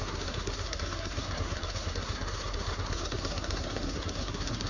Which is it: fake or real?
fake